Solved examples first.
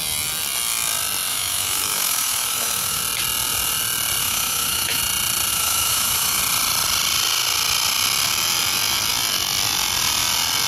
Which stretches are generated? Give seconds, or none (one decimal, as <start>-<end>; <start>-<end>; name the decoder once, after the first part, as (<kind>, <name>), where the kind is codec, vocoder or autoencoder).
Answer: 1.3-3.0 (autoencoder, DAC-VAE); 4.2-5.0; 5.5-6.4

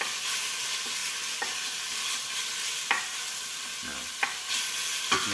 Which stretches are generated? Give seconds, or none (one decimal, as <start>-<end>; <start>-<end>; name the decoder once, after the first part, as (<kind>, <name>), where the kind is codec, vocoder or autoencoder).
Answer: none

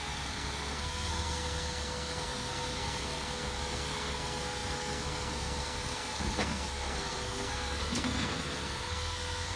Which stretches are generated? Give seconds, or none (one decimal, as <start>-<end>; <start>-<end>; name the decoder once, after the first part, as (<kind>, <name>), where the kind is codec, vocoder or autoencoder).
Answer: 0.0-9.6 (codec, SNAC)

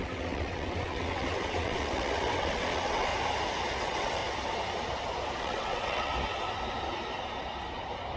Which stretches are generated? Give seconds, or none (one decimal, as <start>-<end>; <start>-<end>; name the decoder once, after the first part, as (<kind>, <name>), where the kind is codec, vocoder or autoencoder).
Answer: 0.0-3.1 (vocoder, WaveNeXt); 3.8-4.2; 5.4-6.1

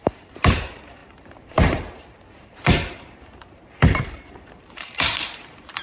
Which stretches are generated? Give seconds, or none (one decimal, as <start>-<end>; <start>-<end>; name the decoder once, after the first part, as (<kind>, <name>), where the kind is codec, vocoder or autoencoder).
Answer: 0.0-5.8 (vocoder, BigVGAN v2)

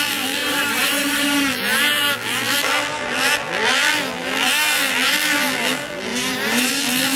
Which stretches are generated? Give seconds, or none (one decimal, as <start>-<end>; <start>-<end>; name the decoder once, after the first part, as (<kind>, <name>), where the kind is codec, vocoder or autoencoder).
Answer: 0.0-0.4 (vocoder, BigVGAN v2); 1.5-6.1; 6.7-7.2

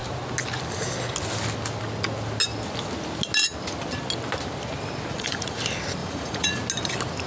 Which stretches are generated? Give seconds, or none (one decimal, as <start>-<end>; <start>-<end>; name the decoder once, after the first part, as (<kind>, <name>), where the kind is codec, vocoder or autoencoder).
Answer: 5.1-5.6 (vocoder, Vocos); 6.0-6.6

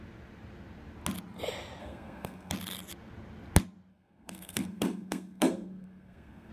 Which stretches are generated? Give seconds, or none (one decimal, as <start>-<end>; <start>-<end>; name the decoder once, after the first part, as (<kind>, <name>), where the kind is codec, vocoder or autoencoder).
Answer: 1.8-2.5 (codec, SNAC); 3.9-6.5